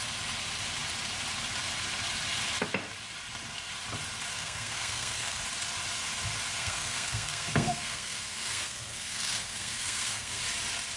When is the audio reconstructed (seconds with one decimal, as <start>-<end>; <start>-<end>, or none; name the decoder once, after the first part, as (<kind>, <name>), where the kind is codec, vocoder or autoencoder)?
4.3-5.4 (codec, SNAC); 6.6-10.4